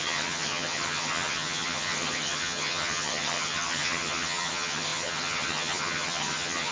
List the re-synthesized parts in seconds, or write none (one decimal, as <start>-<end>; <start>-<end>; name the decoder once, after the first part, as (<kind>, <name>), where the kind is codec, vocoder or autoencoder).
0.0-6.7 (vocoder, HiFi-GAN)